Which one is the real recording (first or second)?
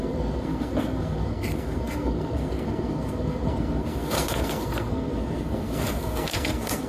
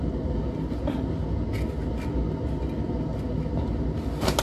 second